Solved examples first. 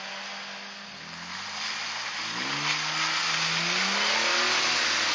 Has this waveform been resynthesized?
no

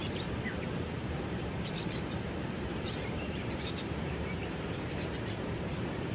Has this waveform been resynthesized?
yes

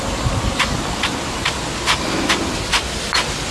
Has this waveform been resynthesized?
no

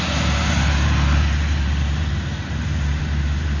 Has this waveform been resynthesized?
yes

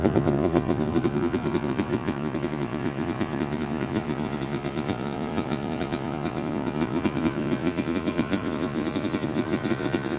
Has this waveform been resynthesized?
yes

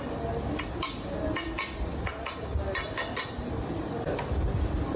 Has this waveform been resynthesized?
no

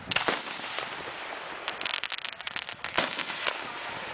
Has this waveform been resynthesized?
no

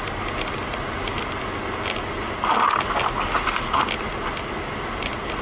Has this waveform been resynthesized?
no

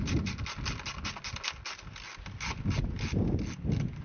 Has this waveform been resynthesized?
no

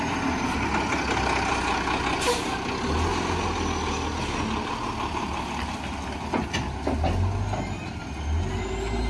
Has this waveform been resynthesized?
no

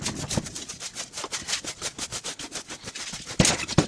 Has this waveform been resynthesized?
no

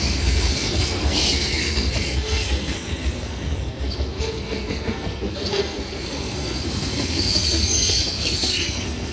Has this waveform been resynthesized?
yes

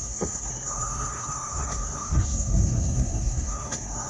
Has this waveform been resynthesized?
yes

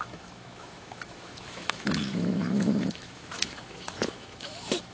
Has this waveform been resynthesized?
yes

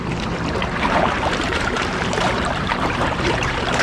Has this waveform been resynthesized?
yes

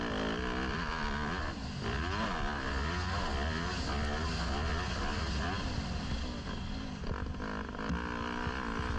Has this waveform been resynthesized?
no